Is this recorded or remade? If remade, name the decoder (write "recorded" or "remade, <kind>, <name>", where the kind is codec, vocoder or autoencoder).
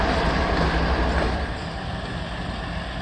recorded